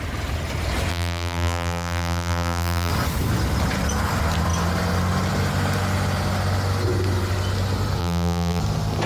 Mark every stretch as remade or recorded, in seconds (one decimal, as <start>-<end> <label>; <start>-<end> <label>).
0.0-0.9 recorded; 0.9-2.9 remade; 2.9-8.0 recorded; 8.0-8.6 remade; 8.6-9.1 recorded